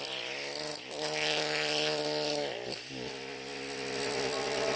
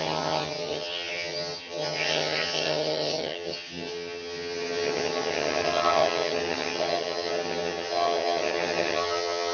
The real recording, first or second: first